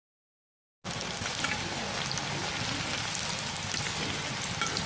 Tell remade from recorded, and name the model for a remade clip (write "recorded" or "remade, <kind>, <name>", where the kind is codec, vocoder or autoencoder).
recorded